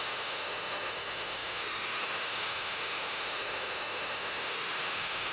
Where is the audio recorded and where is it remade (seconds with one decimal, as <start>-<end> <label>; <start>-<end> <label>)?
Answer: 0.0-5.3 remade